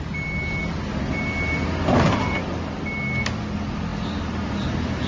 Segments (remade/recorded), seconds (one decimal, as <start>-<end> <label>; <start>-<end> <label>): 0.0-5.1 recorded

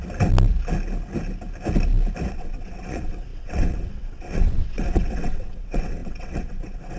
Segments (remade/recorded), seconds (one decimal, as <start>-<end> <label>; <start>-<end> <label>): 0.0-2.3 recorded; 2.3-7.0 remade

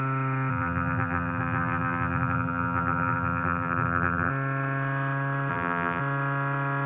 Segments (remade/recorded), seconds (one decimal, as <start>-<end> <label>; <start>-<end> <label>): 0.0-0.5 recorded; 0.5-4.3 remade; 4.3-5.5 recorded; 5.5-6.0 remade; 6.0-6.9 recorded

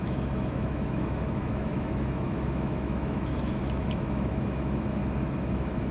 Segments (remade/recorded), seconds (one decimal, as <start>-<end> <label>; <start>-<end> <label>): 0.0-5.0 remade; 5.0-5.5 recorded; 5.5-5.9 remade